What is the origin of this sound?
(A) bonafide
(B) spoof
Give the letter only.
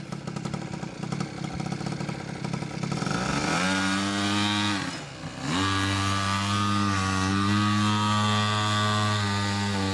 A